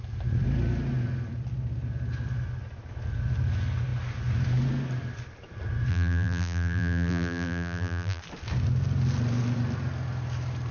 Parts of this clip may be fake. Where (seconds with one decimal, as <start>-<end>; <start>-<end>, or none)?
5.9-8.2